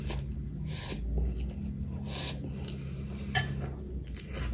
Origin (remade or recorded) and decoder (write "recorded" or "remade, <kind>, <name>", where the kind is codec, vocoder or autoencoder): recorded